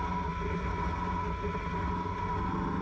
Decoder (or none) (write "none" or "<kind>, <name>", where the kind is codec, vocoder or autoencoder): none